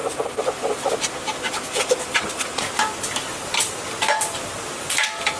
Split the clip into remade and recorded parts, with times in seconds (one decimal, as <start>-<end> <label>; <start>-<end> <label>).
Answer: 0.0-5.4 remade